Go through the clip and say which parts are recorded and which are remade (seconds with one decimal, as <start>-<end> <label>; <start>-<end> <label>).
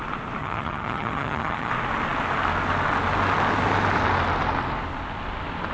0.0-0.4 recorded; 0.4-1.7 remade; 1.7-5.7 recorded